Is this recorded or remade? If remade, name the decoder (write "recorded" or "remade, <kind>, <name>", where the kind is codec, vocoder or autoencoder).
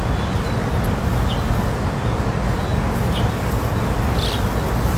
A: recorded